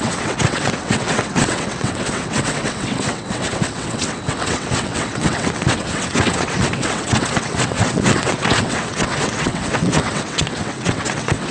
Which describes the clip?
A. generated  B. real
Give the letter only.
A